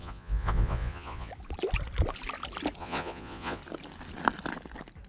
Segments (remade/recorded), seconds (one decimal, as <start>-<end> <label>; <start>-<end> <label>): 0.0-1.3 remade; 1.3-2.8 recorded; 2.8-3.6 remade; 3.6-5.1 recorded